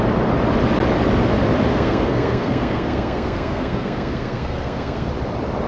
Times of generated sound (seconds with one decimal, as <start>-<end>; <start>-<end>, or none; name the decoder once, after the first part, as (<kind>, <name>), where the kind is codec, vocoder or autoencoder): 1.7-5.1 (codec, SNAC)